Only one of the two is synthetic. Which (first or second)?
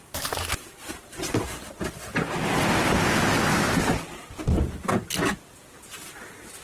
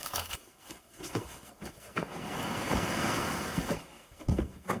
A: second